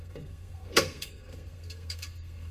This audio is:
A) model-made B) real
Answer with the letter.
A